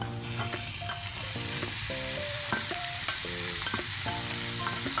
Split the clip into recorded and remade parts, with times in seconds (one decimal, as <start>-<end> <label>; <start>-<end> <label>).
0.0-1.1 recorded; 1.1-4.1 remade; 4.1-5.0 recorded